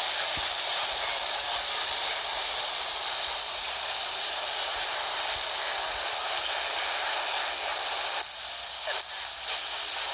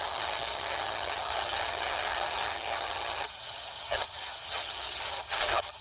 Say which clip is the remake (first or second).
second